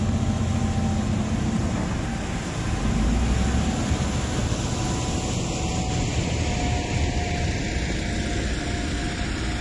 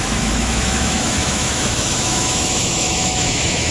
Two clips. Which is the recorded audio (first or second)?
first